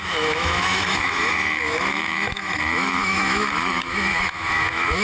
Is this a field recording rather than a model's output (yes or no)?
no